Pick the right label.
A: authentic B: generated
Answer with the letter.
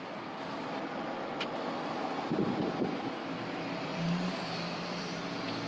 A